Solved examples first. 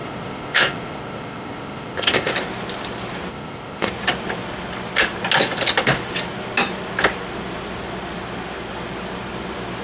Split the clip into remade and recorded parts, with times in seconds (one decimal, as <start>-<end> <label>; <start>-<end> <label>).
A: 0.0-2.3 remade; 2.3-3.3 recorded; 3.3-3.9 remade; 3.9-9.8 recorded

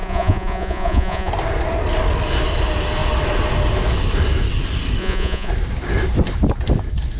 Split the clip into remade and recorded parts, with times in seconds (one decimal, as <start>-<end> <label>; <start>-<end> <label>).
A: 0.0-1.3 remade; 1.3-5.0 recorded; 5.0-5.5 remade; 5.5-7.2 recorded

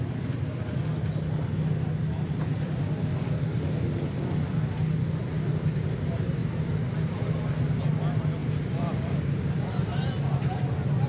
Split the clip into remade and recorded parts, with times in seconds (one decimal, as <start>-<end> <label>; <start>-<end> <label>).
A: 0.0-8.4 recorded; 8.4-10.1 remade; 10.1-11.1 recorded

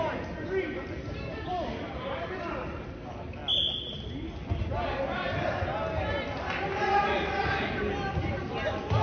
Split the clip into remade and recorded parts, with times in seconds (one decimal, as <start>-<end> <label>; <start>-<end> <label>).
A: 0.0-1.5 recorded; 1.5-2.5 remade; 2.5-9.0 recorded

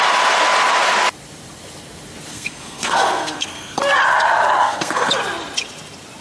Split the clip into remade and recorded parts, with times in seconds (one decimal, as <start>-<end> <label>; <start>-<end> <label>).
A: 0.0-2.3 recorded; 2.3-3.8 remade; 3.8-4.6 recorded; 4.6-5.1 remade; 5.1-6.2 recorded

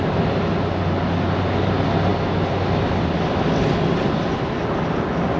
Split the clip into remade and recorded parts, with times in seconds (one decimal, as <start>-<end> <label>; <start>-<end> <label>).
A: 0.0-5.4 recorded

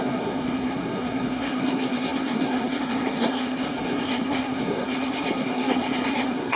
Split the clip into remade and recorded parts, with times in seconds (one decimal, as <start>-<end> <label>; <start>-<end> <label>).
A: 0.0-6.6 remade

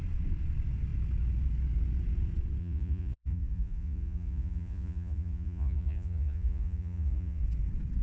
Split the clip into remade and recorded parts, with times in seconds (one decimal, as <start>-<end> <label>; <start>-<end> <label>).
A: 0.0-2.6 recorded; 2.6-7.4 remade; 7.4-8.0 recorded